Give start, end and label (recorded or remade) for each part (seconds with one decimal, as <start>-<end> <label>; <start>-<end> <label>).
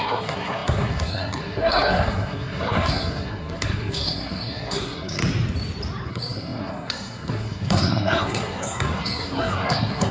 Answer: 0.0-5.2 remade; 5.2-6.1 recorded; 6.1-10.1 remade